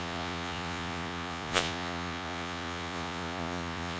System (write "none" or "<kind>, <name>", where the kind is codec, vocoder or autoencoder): vocoder, Vocos